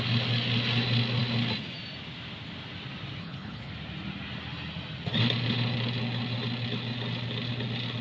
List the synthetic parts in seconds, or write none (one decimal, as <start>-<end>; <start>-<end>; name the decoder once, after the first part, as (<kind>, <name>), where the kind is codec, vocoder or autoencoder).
3.2-3.7 (codec, HILCodec)